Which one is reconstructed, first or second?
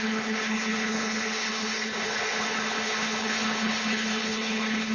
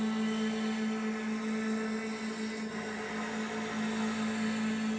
first